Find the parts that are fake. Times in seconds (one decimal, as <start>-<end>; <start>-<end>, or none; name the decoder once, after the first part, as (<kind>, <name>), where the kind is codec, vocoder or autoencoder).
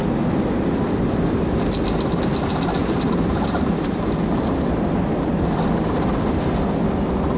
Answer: 2.8-5.3 (vocoder, BigVGAN v2)